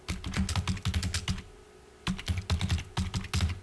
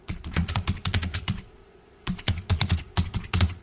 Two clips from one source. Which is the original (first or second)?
first